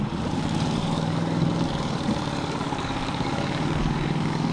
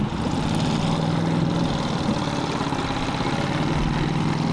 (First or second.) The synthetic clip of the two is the first